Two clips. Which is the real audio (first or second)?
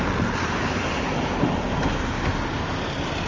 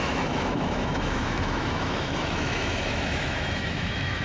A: first